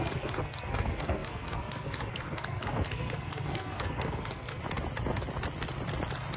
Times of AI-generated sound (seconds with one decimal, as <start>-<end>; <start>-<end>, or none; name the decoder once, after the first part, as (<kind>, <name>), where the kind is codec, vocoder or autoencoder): 0.0-4.6 (codec, SNAC)